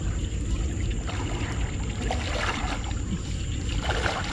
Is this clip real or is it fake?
real